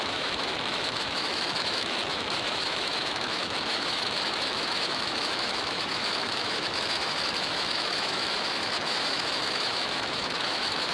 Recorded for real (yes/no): no